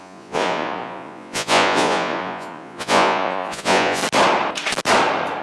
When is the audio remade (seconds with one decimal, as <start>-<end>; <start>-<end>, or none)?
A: 0.0-4.0